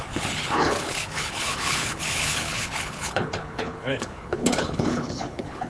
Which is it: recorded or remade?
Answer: remade